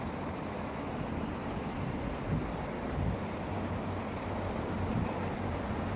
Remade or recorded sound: recorded